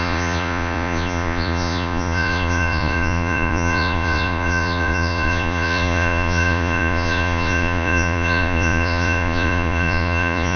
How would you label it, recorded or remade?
remade